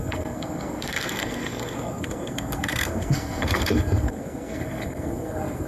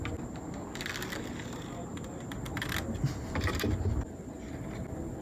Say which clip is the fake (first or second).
first